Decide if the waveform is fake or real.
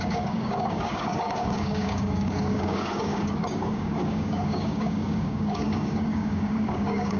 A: fake